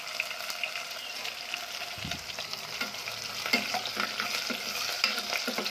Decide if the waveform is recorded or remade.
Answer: recorded